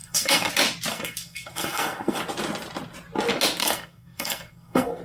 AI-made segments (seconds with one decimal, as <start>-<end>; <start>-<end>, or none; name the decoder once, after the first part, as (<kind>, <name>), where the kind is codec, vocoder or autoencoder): 0.0-0.5 (codec, SNAC); 0.9-2.2; 3.6-5.0